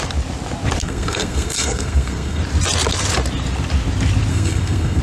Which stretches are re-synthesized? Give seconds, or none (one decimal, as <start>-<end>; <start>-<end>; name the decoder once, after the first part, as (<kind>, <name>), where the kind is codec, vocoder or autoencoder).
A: 0.8-2.4 (codec, SNAC); 4.3-5.0